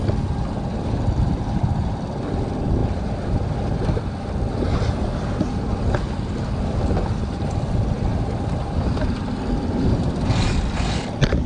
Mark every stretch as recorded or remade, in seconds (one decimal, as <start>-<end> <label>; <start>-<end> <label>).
0.0-11.5 recorded